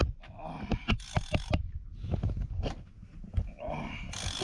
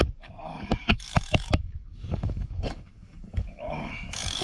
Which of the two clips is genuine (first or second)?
first